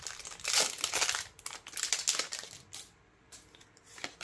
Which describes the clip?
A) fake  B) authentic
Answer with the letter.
B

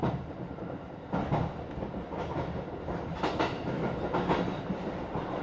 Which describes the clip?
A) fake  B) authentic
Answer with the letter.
B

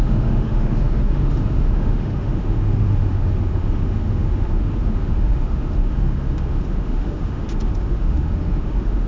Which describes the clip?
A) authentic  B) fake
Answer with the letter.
B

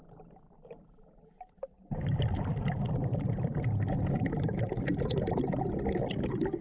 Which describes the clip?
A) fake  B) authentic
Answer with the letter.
B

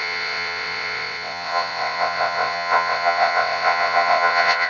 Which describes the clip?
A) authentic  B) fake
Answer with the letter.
B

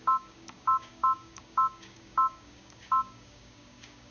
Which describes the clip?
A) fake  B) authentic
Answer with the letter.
A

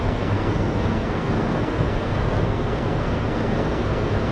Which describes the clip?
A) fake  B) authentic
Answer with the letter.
A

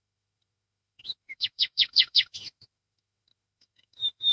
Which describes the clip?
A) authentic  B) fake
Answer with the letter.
B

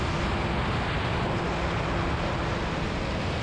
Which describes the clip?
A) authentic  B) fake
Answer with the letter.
A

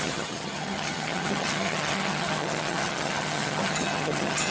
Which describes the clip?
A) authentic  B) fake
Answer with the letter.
B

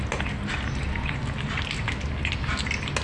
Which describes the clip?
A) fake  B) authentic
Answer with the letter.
B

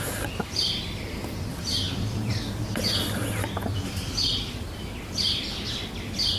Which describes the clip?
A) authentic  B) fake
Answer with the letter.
B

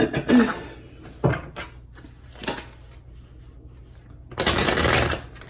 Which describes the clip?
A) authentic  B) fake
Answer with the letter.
A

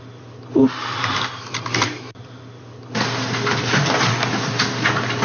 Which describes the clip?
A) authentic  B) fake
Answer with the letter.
A